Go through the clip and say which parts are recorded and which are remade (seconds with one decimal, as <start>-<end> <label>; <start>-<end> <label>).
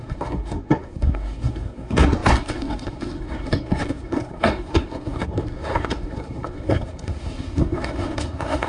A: 0.0-8.7 remade